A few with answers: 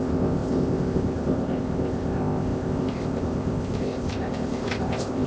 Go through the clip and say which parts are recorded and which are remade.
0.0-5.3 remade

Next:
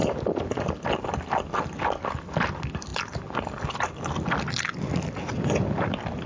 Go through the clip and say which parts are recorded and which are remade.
0.0-6.3 recorded

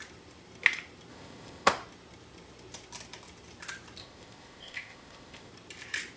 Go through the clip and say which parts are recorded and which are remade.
0.0-1.1 recorded; 1.1-1.7 remade; 1.7-4.0 recorded; 4.0-5.5 remade; 5.5-6.2 recorded

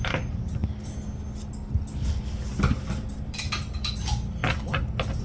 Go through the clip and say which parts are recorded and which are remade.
0.0-5.2 recorded

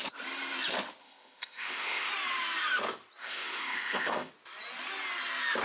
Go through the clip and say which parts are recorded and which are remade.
0.0-1.0 recorded; 1.0-2.1 remade; 2.1-3.2 recorded; 3.2-4.3 remade; 4.3-5.6 recorded

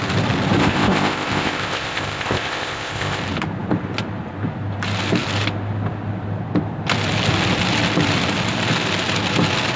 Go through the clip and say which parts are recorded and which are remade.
0.0-0.6 recorded; 0.6-3.2 remade; 3.2-9.8 recorded

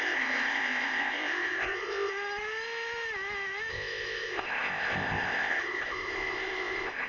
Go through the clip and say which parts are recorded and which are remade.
0.0-2.1 remade; 2.1-3.7 recorded; 3.7-7.1 remade